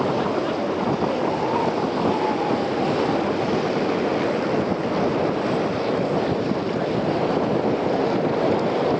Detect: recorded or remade recorded